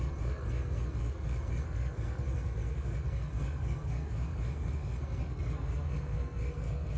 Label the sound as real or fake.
fake